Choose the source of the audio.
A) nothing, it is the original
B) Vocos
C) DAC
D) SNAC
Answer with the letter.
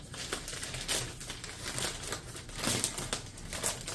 A